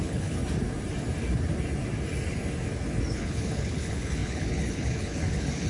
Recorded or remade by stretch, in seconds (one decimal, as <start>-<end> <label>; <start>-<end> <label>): 0.0-0.4 remade; 0.4-3.1 recorded; 3.1-5.7 remade